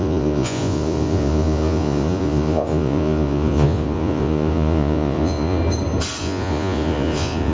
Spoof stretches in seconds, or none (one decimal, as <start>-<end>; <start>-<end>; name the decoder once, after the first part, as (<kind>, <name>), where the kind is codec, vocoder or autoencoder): 0.0-5.6 (vocoder, Vocos); 6.2-7.5